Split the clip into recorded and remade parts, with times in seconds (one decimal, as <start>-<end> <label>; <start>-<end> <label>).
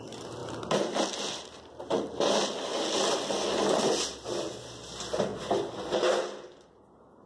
0.0-7.3 recorded